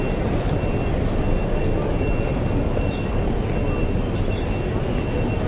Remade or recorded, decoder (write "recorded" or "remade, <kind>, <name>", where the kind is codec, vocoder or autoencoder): recorded